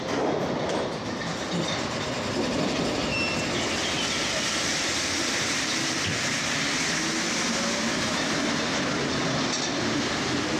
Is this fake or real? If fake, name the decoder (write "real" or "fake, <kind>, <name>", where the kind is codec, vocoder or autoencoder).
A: real